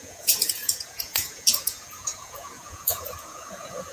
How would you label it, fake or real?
fake